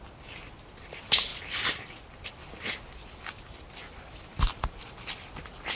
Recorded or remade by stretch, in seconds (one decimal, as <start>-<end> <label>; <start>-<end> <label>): 0.0-5.8 recorded